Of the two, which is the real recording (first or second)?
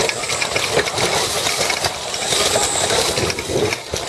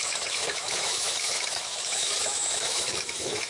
first